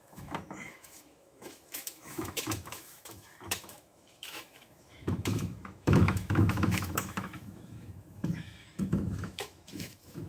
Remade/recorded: remade